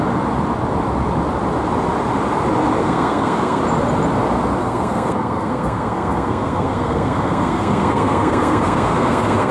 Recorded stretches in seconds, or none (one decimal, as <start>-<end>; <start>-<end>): 0.0-2.8; 3.6-4.6